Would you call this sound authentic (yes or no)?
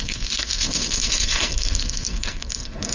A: no